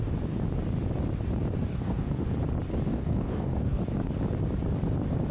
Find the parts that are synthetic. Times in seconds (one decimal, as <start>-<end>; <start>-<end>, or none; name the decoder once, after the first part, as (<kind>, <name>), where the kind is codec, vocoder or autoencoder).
1.7-2.3 (codec, DAC); 2.9-3.8